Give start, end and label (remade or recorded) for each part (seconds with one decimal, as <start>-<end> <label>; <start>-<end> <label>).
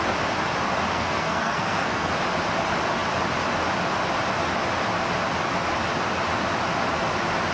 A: 0.0-0.9 recorded; 0.9-2.1 remade; 2.1-7.5 recorded